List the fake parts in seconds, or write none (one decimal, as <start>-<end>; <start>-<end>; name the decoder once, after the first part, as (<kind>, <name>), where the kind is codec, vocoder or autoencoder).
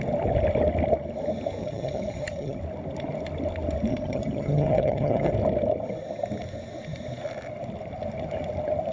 1.6-2.6 (vocoder, HiFi-GAN); 3.9-5.3